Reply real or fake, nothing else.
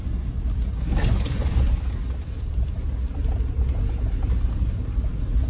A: real